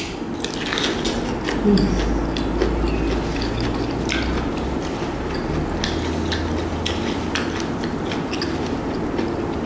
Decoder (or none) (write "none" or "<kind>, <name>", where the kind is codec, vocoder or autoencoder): none